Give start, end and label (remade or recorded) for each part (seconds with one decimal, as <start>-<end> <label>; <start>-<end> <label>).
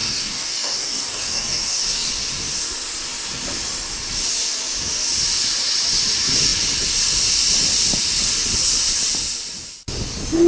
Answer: 0.0-2.1 remade; 2.1-10.5 recorded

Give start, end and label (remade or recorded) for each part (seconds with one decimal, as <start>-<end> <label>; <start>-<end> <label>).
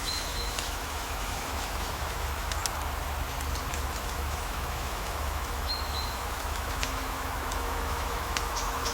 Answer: 0.0-2.6 remade; 2.6-3.7 recorded; 3.7-8.9 remade